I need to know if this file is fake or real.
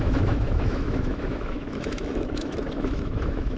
fake